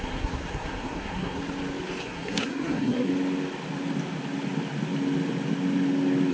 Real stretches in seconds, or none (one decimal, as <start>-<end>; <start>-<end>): 1.4-2.0; 3.1-6.3